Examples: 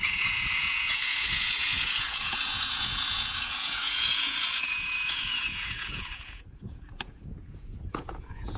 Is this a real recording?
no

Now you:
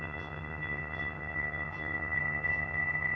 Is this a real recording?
no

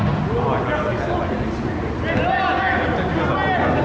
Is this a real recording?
yes